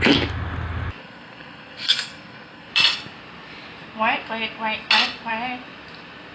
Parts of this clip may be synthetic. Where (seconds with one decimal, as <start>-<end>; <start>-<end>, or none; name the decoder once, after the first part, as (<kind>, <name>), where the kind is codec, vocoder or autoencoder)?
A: 1.0-2.7 (codec, SNAC)